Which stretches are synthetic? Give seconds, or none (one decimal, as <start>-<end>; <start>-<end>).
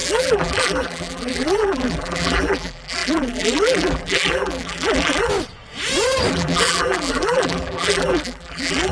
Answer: 0.0-5.3; 6.3-8.9